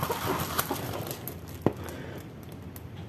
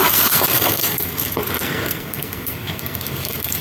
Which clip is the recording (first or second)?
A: first